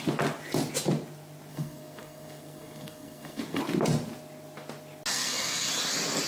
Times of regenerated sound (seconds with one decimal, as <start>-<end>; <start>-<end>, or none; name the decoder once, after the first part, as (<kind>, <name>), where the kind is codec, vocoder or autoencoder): 1.5-3.6 (codec, SNAC); 5.1-5.7